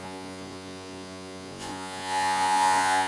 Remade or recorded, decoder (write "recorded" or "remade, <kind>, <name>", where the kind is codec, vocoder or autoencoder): remade, vocoder, Vocos